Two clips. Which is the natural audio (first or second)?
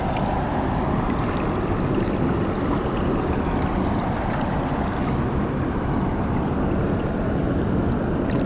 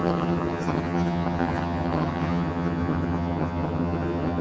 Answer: first